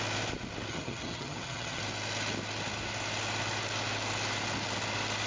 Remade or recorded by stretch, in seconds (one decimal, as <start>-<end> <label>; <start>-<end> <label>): 0.0-0.7 recorded; 0.7-1.8 remade; 1.8-5.3 recorded